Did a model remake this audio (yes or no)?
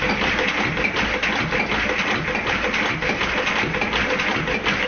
no